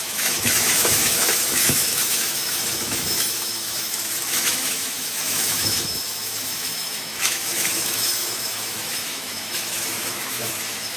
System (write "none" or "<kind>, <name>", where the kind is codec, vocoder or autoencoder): autoencoder, DAC-VAE